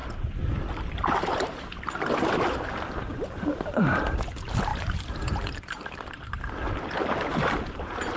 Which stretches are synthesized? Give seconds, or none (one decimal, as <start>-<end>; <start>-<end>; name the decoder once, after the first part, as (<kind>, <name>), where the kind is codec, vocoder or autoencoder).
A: 0.0-8.2 (vocoder, BigVGAN v2)